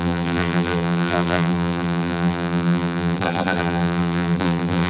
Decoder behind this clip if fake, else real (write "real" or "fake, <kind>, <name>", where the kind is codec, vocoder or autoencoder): fake, vocoder, BigVGAN v2